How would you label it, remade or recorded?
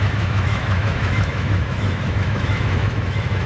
remade